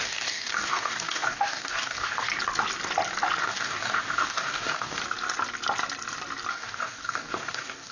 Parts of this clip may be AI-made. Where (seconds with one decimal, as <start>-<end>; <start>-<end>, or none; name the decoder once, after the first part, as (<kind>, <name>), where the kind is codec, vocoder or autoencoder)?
0.0-2.3 (codec, DAC); 3.4-5.0; 6.5-7.9